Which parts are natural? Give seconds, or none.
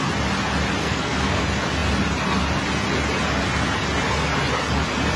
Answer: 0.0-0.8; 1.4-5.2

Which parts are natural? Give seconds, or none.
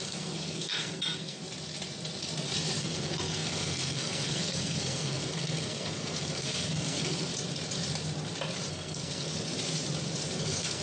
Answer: 1.4-2.8; 7.3-8.7; 9.3-10.4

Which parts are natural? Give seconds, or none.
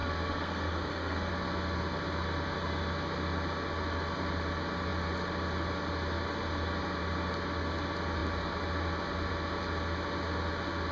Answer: 1.3-10.9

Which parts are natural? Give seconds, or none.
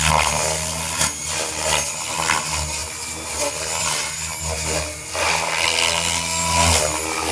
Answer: 0.0-7.3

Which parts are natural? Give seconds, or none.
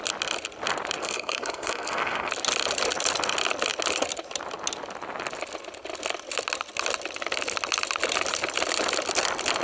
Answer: 0.0-1.0; 2.3-9.6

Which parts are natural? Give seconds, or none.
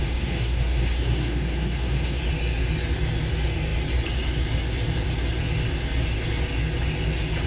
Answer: 2.2-7.5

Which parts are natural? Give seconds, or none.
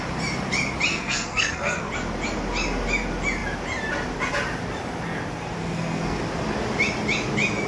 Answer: 0.0-0.9; 1.9-5.6; 6.2-7.7